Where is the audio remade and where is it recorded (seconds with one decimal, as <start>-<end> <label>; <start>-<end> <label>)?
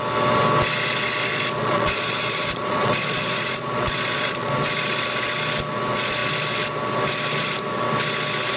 0.0-1.3 recorded; 1.3-4.5 remade; 4.5-8.6 recorded